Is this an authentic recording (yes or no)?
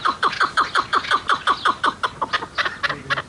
yes